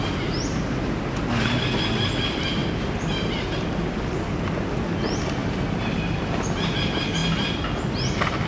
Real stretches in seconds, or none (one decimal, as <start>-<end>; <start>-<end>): 0.0-5.4; 6.0-8.5